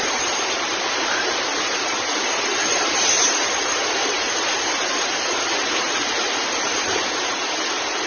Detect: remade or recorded remade